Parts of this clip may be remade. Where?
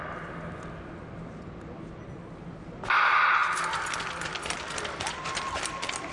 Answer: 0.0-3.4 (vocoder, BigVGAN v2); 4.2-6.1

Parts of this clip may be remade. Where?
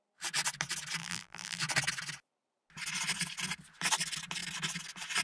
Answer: 1.0-1.6 (vocoder, BigVGAN v2)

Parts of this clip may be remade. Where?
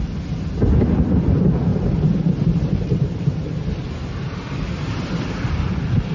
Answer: 1.7-4.9 (vocoder, BigVGAN v2)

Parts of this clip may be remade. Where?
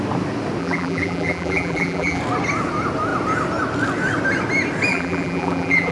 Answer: 0.6-2.2 (vocoder, BigVGAN v2); 4.9-5.9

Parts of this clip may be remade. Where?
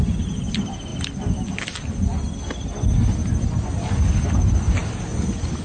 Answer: none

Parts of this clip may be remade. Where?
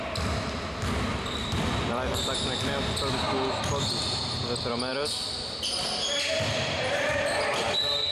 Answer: 1.4-2.4 (vocoder, BigVGAN v2); 4.9-5.9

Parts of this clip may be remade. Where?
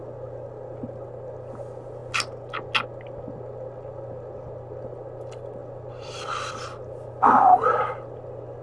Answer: 5.6-7.1 (vocoder, BigVGAN v2)